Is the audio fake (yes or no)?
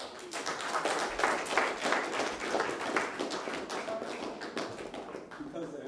no